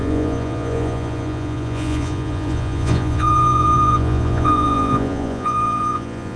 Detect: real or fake fake